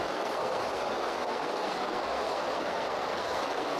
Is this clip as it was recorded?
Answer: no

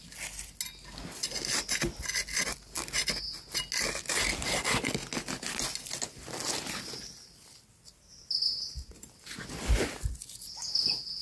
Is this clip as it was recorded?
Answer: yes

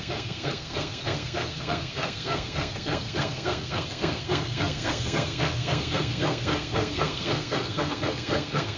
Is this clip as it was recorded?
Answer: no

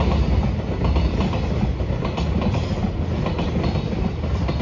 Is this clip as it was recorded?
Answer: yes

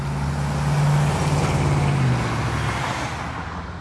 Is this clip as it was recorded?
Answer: yes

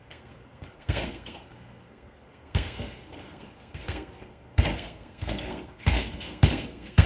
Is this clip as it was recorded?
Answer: no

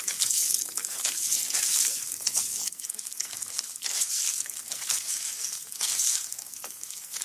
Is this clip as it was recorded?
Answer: no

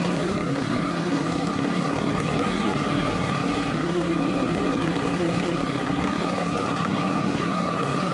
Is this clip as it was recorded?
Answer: no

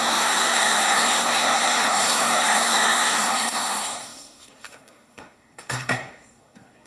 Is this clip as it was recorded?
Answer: no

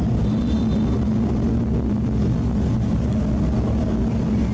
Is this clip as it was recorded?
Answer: yes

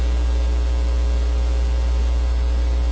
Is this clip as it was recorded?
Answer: yes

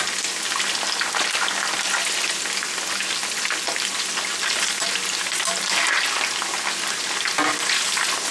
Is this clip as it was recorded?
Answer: yes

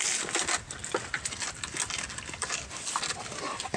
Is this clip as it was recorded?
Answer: yes